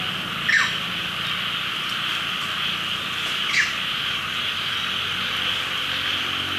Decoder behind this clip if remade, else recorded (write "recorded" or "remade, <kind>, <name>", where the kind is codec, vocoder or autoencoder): recorded